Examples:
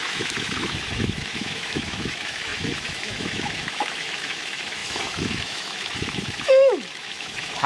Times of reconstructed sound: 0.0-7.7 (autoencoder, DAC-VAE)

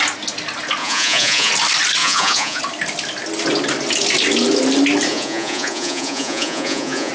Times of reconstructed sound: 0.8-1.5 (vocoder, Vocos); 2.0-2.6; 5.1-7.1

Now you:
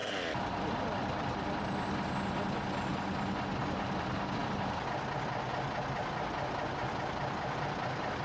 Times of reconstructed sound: none

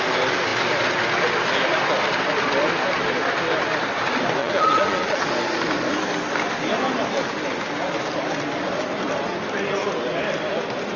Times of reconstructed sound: 4.4-5.2 (vocoder, Vocos)

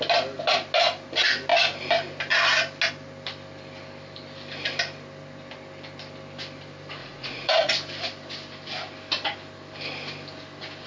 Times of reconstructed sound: 7.0-7.7 (vocoder, Vocos)

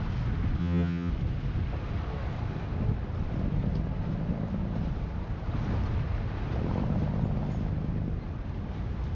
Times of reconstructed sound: 0.6-1.1 (vocoder, HiFi-GAN)

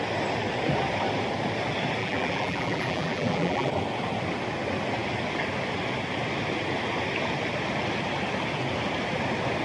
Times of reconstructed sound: 2.0-3.7 (vocoder, BigVGAN v2)